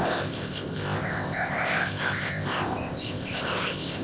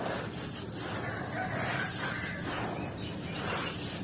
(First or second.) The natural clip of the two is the second